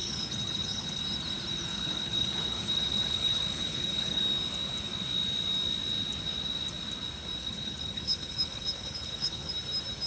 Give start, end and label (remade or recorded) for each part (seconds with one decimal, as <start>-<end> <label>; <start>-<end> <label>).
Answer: 0.0-1.0 remade; 1.0-1.7 recorded; 1.7-4.2 remade; 4.2-7.4 recorded; 7.4-9.5 remade; 9.5-10.1 recorded